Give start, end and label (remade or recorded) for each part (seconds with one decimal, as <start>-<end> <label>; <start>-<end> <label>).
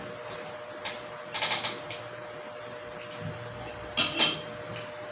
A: 0.0-5.1 recorded